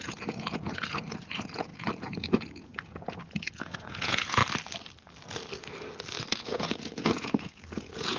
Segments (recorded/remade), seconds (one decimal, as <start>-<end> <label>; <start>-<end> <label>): 0.0-4.4 remade; 4.4-6.3 recorded; 6.3-8.2 remade